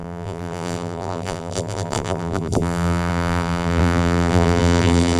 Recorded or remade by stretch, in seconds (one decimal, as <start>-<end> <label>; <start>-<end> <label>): 0.0-5.2 remade

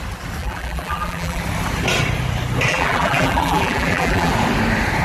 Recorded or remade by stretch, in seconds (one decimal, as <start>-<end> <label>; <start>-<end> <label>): 0.0-0.4 recorded; 0.4-1.4 remade; 1.4-2.7 recorded; 2.7-4.3 remade; 4.3-5.0 recorded

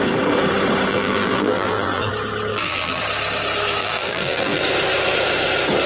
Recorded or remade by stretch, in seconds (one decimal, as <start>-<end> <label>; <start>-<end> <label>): 0.0-0.9 recorded; 0.9-2.1 remade; 2.1-2.5 recorded; 2.5-3.0 remade; 3.0-3.8 recorded; 3.8-4.6 remade; 4.6-5.9 recorded

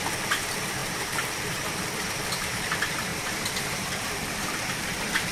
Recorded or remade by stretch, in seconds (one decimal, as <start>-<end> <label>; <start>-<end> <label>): 0.0-5.3 remade

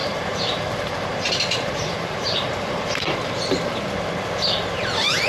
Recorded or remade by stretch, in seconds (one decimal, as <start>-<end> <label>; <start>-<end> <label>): 0.0-3.2 remade; 3.2-5.3 recorded

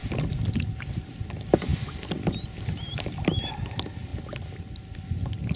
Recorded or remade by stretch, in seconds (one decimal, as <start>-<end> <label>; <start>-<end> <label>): 0.0-1.0 remade; 1.0-1.7 recorded; 1.7-3.6 remade; 3.6-5.6 recorded

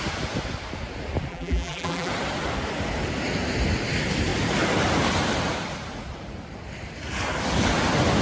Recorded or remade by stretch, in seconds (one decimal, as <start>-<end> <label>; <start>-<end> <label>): 0.0-1.3 recorded; 1.3-2.1 remade; 2.1-8.2 recorded